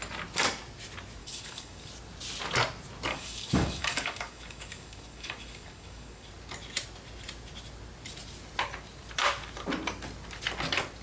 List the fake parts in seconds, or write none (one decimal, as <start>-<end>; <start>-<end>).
1.2-1.9; 3.1-6.3